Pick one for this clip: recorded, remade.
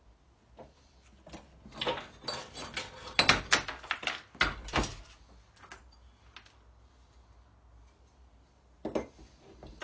recorded